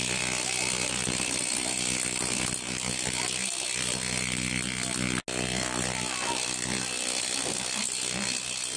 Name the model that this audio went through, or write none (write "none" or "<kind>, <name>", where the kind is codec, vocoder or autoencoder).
none